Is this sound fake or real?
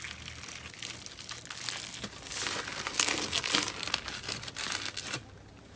real